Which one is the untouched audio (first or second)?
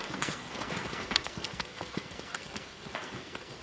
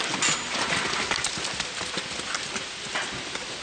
second